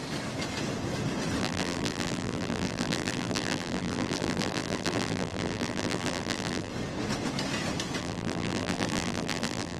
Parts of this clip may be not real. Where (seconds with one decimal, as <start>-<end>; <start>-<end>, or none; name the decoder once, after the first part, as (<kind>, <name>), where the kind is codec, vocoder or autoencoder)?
1.4-6.7 (vocoder, BigVGAN v2); 8.0-9.8